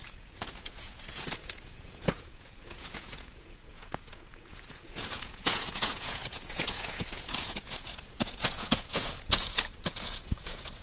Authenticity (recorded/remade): remade